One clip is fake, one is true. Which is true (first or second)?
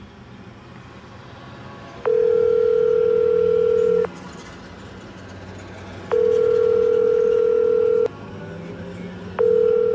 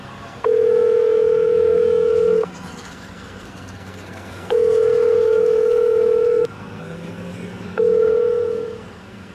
first